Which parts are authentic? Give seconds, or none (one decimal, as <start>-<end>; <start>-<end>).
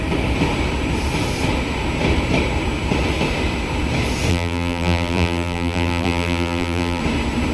0.0-4.3; 7.0-7.5